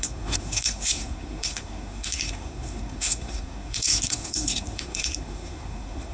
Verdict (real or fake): fake